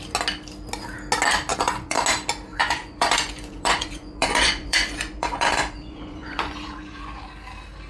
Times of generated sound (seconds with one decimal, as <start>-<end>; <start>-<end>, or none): 1.5-2.0; 2.5-7.2